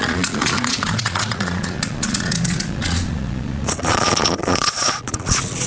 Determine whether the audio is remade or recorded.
remade